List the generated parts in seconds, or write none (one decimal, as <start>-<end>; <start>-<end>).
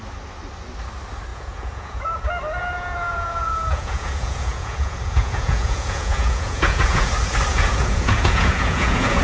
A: 1.3-2.0; 2.6-7.1; 7.5-9.2